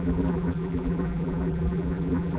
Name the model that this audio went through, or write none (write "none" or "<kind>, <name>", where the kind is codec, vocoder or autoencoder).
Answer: vocoder, BigVGAN v2